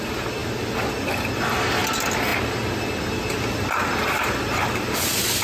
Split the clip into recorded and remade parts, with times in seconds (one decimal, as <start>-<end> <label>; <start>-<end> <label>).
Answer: 0.0-5.4 recorded

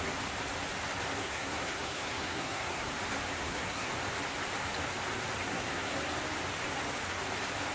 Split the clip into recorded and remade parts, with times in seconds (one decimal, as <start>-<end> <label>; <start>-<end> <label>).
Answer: 0.0-1.2 recorded; 1.2-2.9 remade; 2.9-3.4 recorded; 3.4-3.9 remade; 3.9-5.5 recorded; 5.5-6.0 remade; 6.0-7.7 recorded

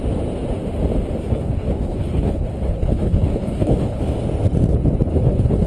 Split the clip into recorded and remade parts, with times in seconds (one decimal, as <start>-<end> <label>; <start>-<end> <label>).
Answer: 0.0-1.2 recorded; 1.2-4.0 remade; 4.0-5.1 recorded; 5.1-5.7 remade

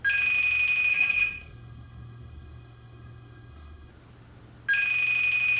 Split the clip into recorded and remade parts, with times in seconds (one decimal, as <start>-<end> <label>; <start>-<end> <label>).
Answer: 0.0-0.9 recorded; 0.9-3.9 remade; 3.9-5.6 recorded